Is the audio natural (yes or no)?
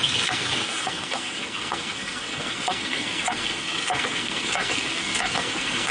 no